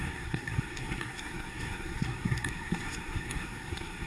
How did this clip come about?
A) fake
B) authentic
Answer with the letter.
A